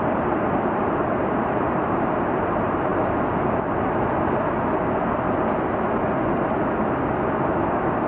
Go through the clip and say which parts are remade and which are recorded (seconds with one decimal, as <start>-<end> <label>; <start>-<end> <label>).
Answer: 0.0-2.9 remade; 2.9-8.1 recorded

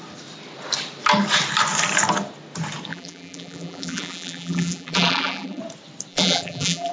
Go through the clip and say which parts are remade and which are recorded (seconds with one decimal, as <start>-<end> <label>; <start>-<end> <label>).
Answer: 0.0-2.9 recorded; 2.9-5.6 remade; 5.6-6.1 recorded; 6.1-6.9 remade

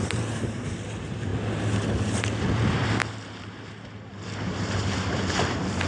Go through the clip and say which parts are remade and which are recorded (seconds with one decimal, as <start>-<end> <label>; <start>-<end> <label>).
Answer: 0.0-1.3 remade; 1.3-1.9 recorded; 1.9-5.9 remade

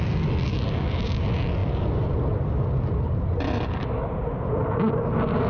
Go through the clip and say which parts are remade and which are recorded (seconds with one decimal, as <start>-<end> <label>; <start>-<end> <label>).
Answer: 0.0-5.5 recorded

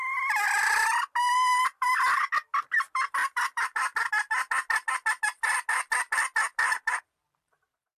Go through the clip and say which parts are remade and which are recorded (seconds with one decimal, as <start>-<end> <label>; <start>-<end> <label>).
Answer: 0.0-3.2 recorded; 3.2-4.1 remade; 4.1-8.0 recorded

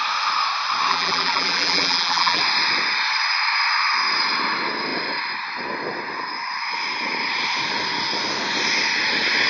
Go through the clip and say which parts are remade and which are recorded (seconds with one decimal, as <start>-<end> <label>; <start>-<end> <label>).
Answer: 0.0-0.9 recorded; 0.9-2.4 remade; 2.4-9.5 recorded